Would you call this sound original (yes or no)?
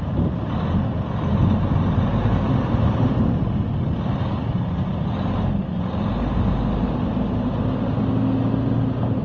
yes